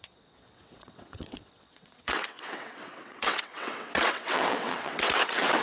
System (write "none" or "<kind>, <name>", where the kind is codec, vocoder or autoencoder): vocoder, WaveNeXt